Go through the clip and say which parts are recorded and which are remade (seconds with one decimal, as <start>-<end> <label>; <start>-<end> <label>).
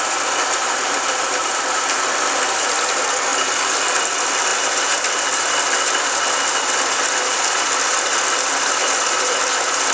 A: 0.0-0.6 recorded; 0.6-2.1 remade; 2.1-9.9 recorded